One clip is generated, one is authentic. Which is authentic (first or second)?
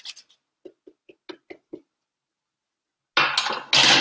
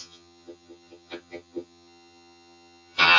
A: first